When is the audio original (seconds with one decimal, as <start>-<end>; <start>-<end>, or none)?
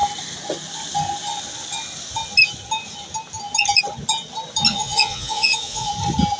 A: 0.0-4.7; 5.9-6.4